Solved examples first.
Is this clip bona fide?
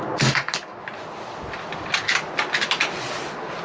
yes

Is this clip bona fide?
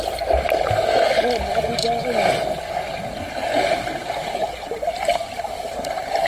yes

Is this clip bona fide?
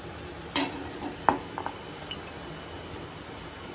yes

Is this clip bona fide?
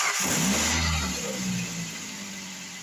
yes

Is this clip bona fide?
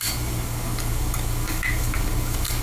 no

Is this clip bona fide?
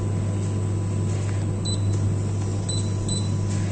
yes